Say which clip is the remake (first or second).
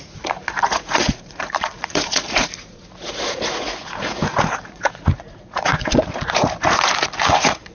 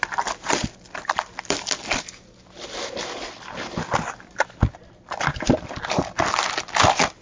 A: first